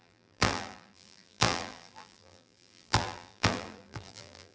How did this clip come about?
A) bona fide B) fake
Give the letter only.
B